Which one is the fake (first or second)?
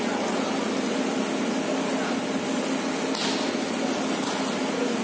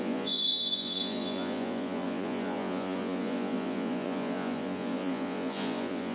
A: second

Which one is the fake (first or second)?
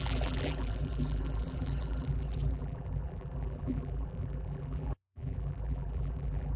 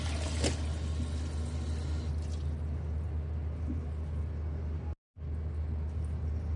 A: first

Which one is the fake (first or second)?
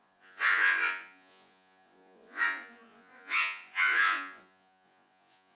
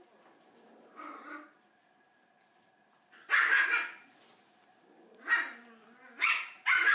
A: first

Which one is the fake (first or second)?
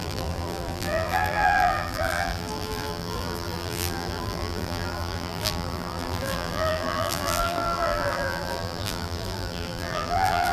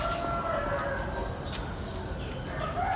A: first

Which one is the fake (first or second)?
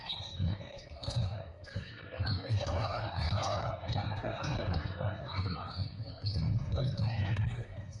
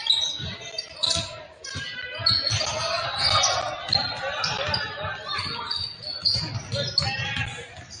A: first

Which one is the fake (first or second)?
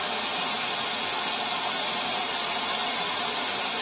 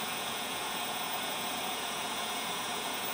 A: second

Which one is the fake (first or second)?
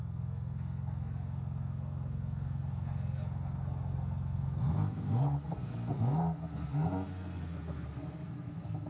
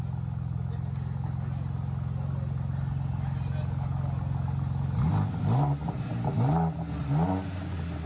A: first